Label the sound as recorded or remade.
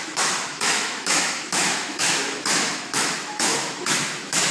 remade